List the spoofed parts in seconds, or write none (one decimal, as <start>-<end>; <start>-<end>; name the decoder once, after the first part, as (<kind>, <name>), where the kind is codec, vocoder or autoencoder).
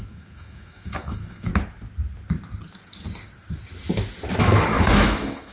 0.0-1.5 (autoencoder, DAC-VAE); 4.4-5.5